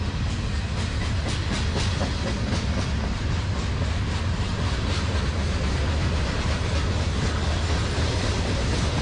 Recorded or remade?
recorded